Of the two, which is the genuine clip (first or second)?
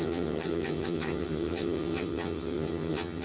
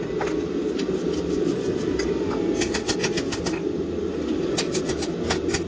second